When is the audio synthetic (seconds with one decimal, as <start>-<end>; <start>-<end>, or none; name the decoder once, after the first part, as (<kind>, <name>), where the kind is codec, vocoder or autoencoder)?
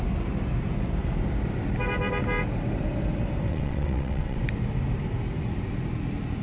3.5-4.4 (vocoder, WaveNeXt)